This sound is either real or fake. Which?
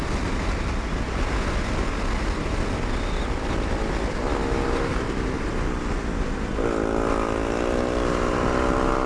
real